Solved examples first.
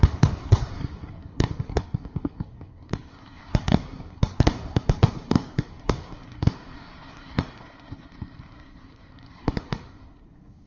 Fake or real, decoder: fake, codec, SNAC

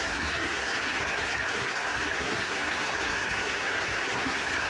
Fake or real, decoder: fake, codec, SNAC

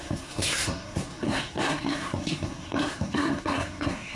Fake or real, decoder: fake, codec, SNAC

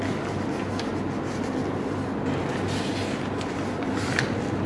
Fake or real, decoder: real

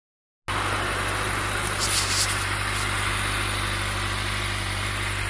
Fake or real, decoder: real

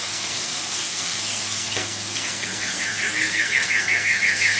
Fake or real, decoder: fake, codec, SNAC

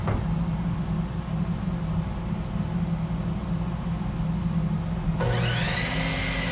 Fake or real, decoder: real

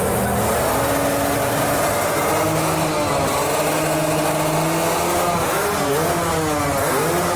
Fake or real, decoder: real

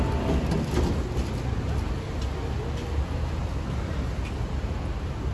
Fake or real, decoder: real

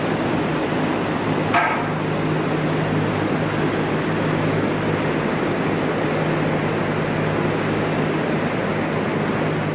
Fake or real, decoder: real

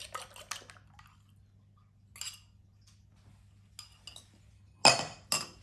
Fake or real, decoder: real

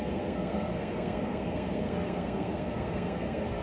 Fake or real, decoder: fake, codec, SNAC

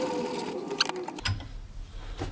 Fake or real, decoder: real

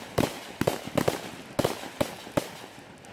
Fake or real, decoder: real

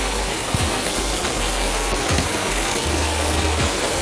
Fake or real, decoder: fake, codec, SNAC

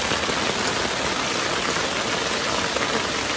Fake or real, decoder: real